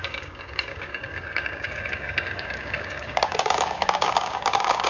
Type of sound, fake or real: fake